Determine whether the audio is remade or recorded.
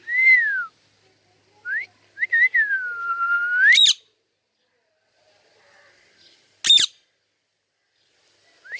recorded